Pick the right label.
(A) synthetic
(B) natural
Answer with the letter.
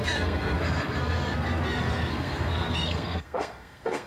A